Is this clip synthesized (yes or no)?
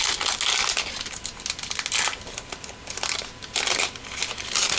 no